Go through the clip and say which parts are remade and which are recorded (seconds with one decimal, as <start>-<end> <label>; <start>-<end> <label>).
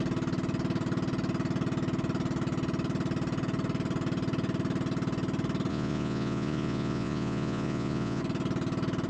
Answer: 0.0-5.7 recorded; 5.7-8.2 remade; 8.2-9.1 recorded